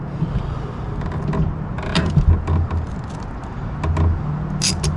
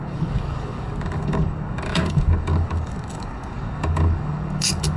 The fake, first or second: second